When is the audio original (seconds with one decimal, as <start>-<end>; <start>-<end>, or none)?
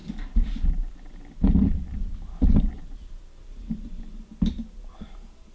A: 0.0-5.5